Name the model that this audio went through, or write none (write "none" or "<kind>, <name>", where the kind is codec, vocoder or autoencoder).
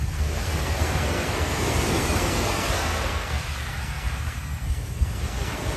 codec, SNAC